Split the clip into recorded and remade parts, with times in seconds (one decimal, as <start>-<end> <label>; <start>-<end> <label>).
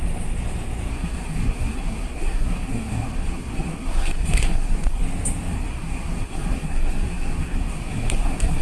0.0-0.9 recorded; 0.9-5.0 remade; 5.0-5.5 recorded; 5.5-8.6 remade